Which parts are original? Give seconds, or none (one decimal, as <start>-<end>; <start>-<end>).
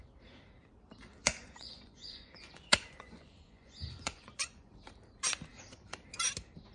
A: 0.0-1.2; 4.7-6.7